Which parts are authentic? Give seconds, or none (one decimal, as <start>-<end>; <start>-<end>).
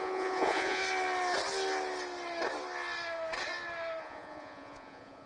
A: 0.8-4.0